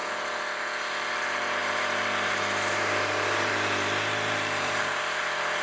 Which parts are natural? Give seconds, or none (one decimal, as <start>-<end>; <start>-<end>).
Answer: 0.0-1.1